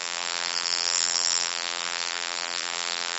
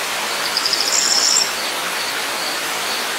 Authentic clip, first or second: second